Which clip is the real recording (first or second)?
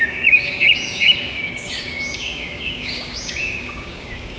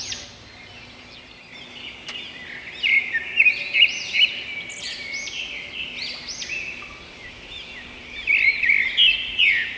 second